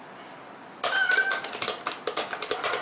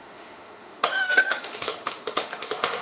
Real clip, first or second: first